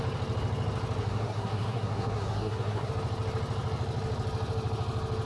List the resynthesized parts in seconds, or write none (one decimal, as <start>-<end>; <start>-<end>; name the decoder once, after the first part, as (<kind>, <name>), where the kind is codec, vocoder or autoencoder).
1.0-2.9 (codec, SNAC)